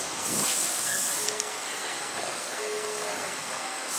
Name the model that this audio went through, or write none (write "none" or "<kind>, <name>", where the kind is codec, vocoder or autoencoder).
codec, SNAC